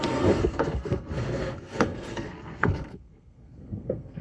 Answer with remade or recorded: remade